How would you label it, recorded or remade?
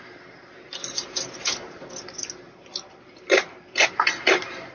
recorded